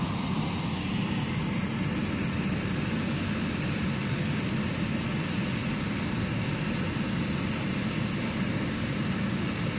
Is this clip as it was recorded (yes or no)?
yes